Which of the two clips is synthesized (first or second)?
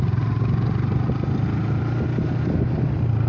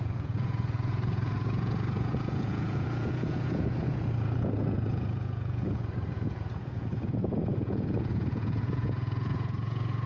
second